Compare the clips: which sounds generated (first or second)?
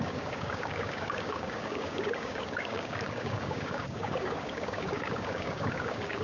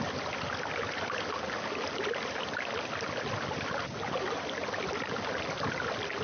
first